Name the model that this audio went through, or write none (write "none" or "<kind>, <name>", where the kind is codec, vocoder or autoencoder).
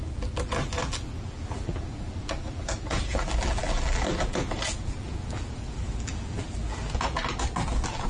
vocoder, BigVGAN v2